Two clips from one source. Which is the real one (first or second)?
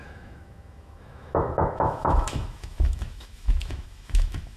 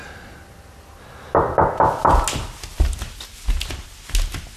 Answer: second